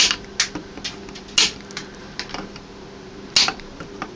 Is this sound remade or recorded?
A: recorded